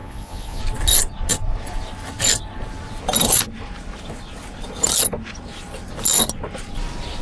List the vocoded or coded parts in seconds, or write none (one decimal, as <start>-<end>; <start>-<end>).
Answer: 0.0-0.6